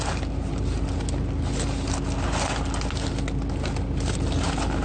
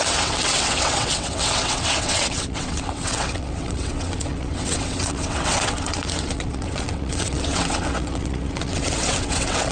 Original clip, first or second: first